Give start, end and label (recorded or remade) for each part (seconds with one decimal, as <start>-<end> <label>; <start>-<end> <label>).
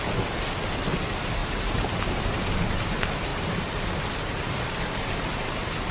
0.0-1.4 recorded; 1.4-2.0 remade; 2.0-3.3 recorded; 3.3-4.0 remade; 4.0-5.9 recorded